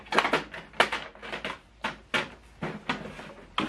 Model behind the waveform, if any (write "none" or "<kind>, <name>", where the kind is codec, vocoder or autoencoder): none